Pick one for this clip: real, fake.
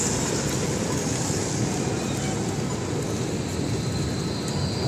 real